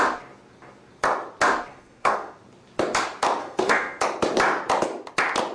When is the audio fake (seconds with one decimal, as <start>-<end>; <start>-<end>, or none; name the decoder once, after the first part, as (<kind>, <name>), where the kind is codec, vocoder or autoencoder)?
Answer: 1.7-2.4 (codec, SNAC); 3.4-4.0